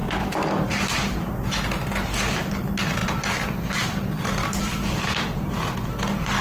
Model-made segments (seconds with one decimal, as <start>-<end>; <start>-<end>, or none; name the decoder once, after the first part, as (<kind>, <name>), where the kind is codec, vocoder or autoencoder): 0.0-1.3 (vocoder, BigVGAN v2); 3.0-5.5